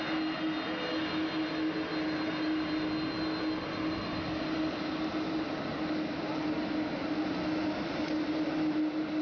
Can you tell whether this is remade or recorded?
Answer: recorded